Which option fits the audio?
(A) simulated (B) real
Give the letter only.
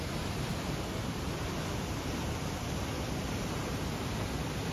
B